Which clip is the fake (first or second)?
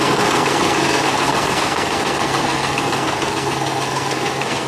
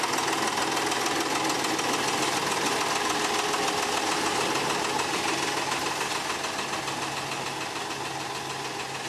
first